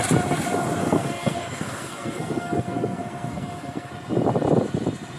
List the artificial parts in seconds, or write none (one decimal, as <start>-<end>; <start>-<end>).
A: 0.8-3.9